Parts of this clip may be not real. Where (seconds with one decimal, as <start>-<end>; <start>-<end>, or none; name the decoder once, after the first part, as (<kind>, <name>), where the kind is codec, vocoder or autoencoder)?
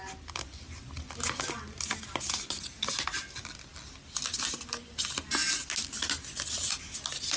none